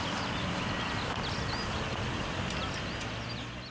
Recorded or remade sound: recorded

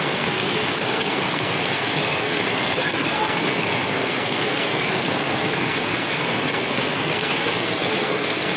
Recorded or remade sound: remade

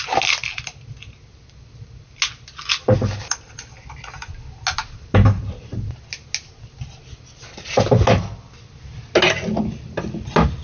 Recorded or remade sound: recorded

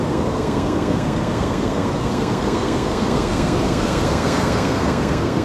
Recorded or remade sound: remade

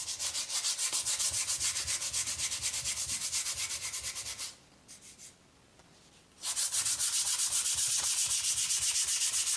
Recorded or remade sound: recorded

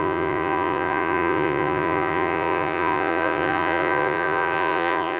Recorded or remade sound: remade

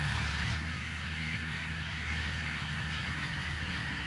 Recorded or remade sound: remade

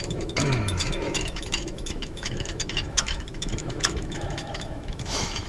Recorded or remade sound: remade